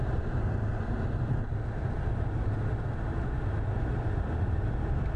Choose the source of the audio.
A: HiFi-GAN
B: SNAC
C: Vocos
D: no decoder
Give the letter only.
D